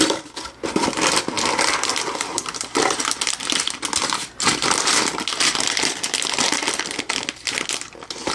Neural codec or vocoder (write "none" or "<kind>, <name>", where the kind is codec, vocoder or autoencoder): none